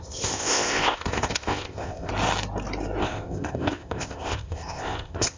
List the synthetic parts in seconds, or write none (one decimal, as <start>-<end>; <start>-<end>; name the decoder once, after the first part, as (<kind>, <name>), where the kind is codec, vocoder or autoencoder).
0.0-2.1 (codec, ZipCodec); 3.0-5.4